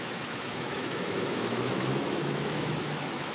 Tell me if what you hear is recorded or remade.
remade